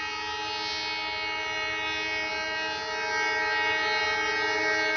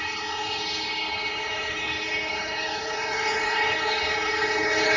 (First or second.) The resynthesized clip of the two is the second